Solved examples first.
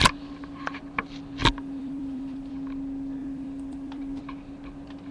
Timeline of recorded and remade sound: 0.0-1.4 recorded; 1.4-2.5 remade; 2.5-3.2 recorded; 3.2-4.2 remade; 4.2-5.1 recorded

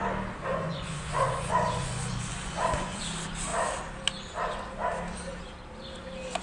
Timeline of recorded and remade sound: 0.0-0.5 recorded; 0.5-3.0 remade; 3.0-6.4 recorded

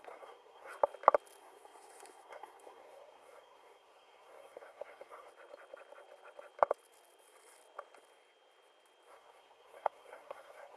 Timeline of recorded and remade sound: 0.0-0.7 remade; 0.7-1.4 recorded; 1.4-5.3 remade; 5.3-9.1 recorded; 9.1-10.8 remade

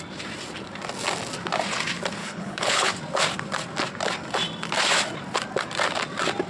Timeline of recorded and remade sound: 0.0-2.2 recorded; 2.2-2.9 remade; 2.9-6.5 recorded

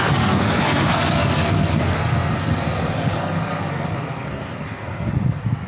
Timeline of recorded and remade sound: 0.0-5.7 remade

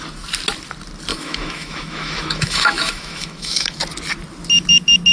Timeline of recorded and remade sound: 0.0-1.1 recorded; 1.1-3.8 remade; 3.8-5.1 recorded

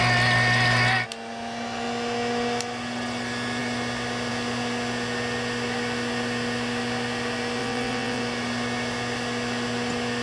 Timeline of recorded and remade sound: 0.0-7.6 recorded; 7.6-8.2 remade; 8.2-10.2 recorded